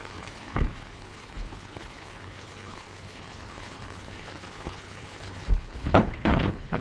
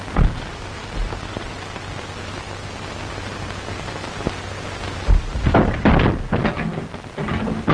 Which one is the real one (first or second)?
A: second